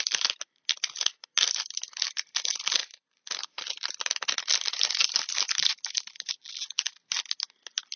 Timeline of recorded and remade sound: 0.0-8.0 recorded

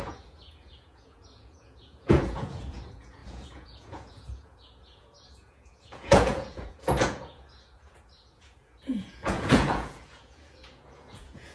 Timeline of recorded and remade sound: 0.0-11.5 remade

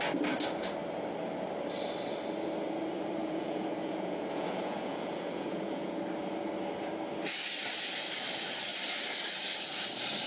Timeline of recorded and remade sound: 0.0-3.2 recorded; 3.2-6.0 remade; 6.0-10.3 recorded